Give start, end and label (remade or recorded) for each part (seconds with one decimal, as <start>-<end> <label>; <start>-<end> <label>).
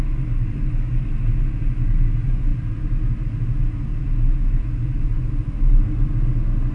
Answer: 0.0-6.7 recorded